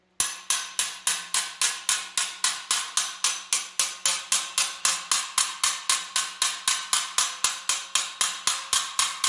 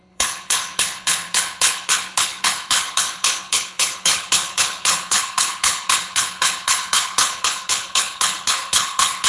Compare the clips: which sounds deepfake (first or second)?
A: second